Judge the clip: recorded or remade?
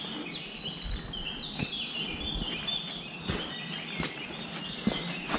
recorded